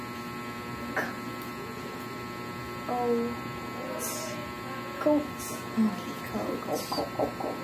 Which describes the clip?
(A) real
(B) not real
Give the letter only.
A